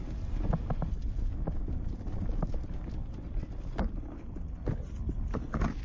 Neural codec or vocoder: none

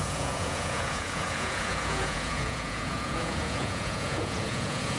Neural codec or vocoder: vocoder, Vocos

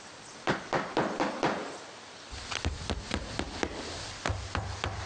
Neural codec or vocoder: vocoder, BigVGAN v2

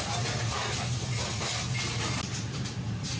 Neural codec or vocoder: none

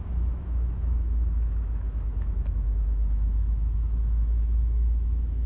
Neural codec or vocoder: autoencoder, DAC-VAE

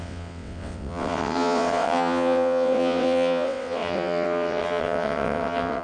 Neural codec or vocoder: vocoder, WaveNeXt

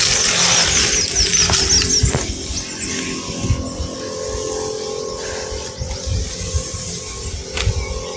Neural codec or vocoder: none